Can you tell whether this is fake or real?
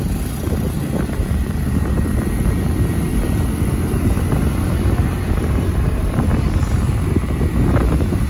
real